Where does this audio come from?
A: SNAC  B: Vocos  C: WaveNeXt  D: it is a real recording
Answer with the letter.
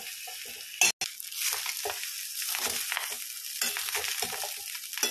D